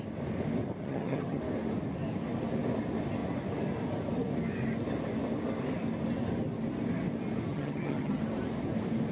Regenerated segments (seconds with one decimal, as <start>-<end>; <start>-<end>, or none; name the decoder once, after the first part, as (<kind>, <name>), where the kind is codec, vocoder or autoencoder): 0.8-1.4 (vocoder, HiFi-GAN); 7.5-8.2